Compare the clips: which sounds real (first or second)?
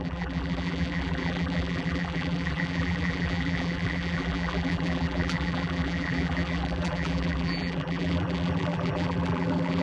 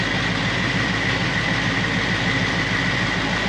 second